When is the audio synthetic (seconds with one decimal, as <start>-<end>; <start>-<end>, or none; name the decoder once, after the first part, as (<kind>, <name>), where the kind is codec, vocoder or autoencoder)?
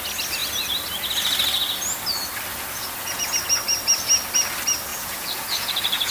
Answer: 2.5-3.2 (vocoder, Vocos); 4.9-6.1